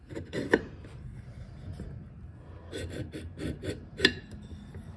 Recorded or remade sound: recorded